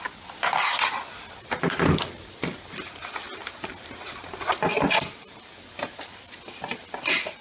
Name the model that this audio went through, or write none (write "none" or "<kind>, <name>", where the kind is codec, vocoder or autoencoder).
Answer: none